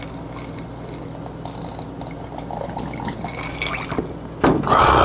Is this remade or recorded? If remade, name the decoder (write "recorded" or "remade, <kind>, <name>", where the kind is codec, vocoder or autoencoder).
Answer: recorded